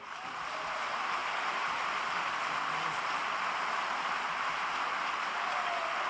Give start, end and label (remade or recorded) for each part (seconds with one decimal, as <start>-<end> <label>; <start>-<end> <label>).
0.0-6.1 recorded